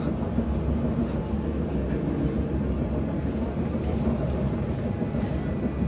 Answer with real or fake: real